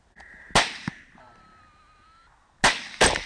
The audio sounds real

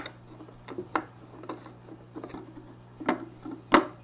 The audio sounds real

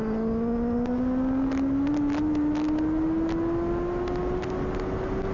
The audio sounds real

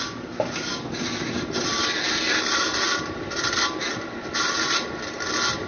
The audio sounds real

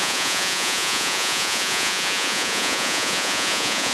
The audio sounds fake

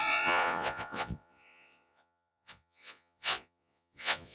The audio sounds fake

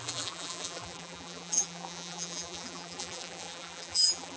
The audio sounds fake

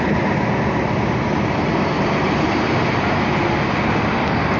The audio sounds real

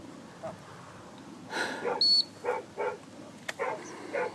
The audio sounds real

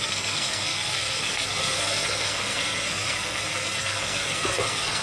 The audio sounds fake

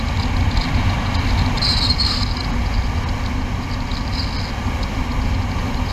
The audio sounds real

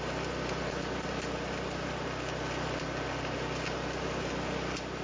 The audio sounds real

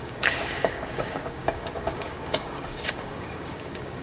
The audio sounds fake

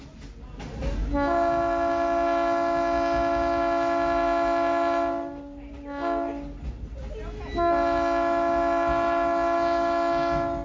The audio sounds real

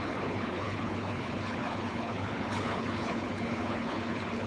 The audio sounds fake